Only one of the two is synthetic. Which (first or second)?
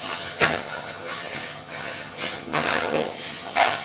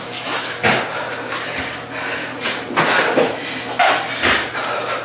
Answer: first